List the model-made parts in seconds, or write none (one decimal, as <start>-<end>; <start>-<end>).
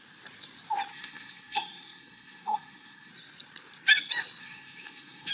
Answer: 0.9-3.1; 4.4-5.3